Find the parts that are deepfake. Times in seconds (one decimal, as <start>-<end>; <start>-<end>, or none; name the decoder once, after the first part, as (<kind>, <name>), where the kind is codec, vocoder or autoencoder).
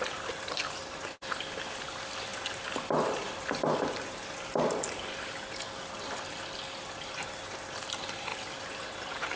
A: 0.0-2.3 (vocoder, BigVGAN v2); 7.1-8.3